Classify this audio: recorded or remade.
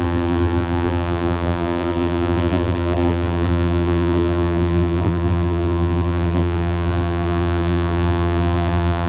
remade